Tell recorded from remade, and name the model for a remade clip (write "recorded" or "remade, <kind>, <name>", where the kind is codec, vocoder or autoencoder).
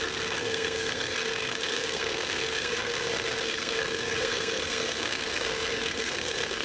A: remade, codec, SNAC